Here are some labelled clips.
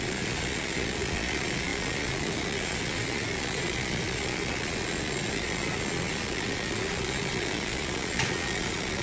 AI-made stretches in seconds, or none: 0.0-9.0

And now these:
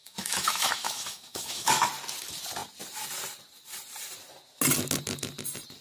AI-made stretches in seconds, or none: 0.0-1.9

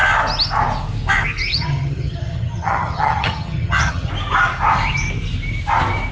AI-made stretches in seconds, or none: 1.5-4.1

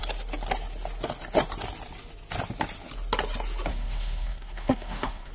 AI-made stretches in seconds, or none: 3.7-5.3

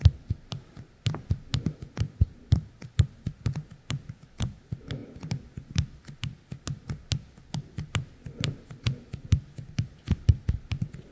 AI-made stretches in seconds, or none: none

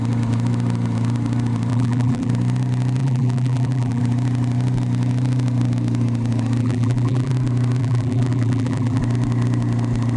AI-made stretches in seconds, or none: 1.7-2.3; 3.0-4.0; 6.6-7.3; 7.8-9.0

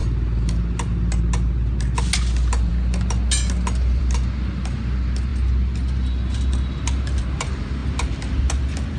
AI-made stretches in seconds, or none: none

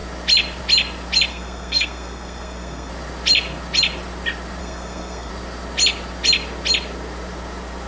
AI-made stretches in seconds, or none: 1.3-2.9; 4.6-5.3